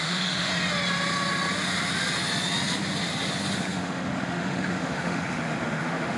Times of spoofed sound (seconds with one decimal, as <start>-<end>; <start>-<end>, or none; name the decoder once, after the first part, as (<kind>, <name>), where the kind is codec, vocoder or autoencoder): 0.0-0.5 (autoencoder, DAC-VAE); 3.7-6.2

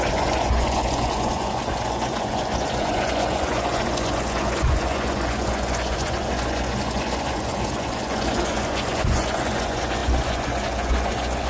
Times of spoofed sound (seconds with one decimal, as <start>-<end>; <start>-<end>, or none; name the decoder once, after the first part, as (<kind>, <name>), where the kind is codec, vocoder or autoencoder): 0.0-11.5 (vocoder, Vocos)

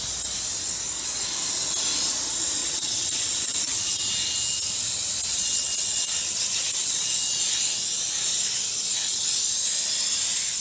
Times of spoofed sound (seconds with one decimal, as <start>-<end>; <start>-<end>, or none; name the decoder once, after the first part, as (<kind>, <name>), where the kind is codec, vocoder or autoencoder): 2.6-4.1 (vocoder, WaveNeXt); 5.3-7.0

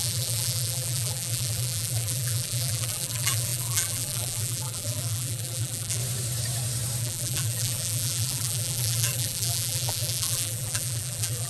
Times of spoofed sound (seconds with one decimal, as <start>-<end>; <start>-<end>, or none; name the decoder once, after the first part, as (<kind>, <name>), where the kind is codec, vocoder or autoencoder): 0.0-6.0 (vocoder, BigVGAN v2); 7.0-11.5